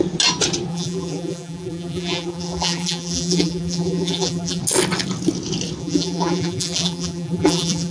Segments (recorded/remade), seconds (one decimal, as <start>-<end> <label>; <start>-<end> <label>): 0.0-0.7 recorded; 0.7-4.6 remade; 4.6-5.8 recorded; 5.8-7.9 remade